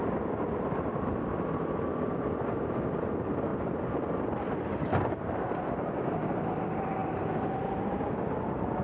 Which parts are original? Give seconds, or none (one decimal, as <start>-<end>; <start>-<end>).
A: 0.0-8.8